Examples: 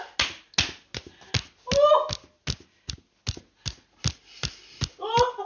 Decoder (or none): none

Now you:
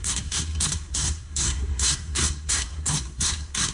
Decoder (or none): codec, SNAC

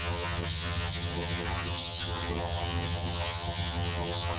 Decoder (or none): vocoder, HiFi-GAN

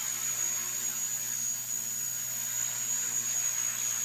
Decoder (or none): none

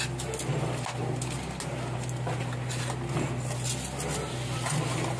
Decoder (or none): none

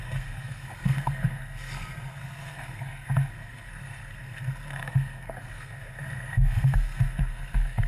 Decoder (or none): codec, SNAC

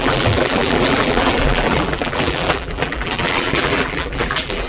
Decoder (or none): vocoder, BigVGAN v2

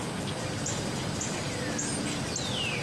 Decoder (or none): none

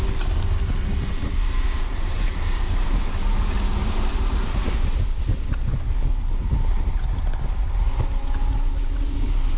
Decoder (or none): none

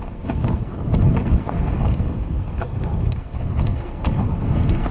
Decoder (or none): codec, SNAC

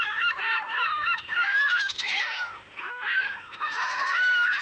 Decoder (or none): autoencoder, DAC-VAE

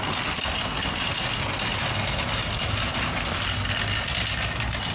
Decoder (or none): none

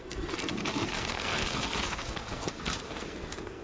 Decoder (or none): codec, SNAC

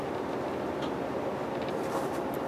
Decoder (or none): none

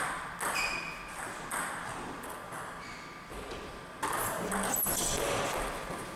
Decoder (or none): none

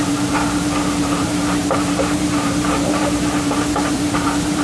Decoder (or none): vocoder, BigVGAN v2